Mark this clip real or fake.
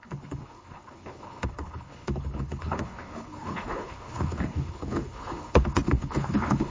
fake